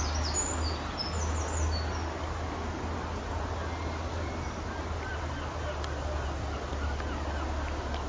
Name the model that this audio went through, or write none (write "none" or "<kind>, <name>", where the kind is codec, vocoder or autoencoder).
none